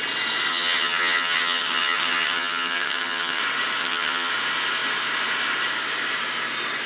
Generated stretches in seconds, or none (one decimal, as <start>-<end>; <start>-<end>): 0.5-3.4; 3.8-4.3